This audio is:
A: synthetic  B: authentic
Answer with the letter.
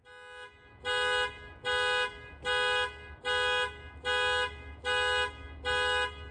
B